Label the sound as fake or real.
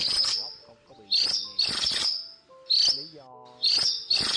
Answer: real